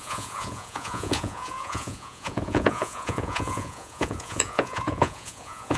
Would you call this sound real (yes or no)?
no